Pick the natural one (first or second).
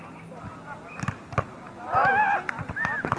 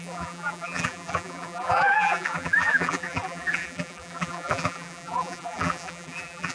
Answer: first